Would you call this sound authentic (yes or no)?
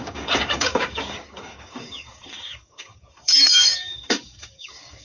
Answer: no